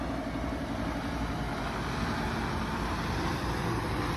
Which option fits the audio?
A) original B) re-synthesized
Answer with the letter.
A